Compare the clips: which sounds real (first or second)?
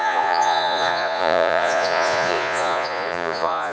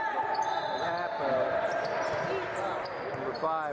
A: second